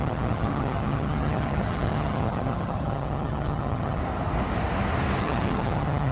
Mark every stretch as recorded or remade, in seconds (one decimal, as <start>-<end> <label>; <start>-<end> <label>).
0.0-4.0 remade; 4.0-5.2 recorded; 5.2-6.1 remade